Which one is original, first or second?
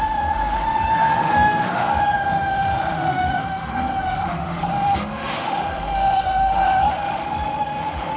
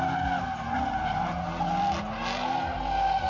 second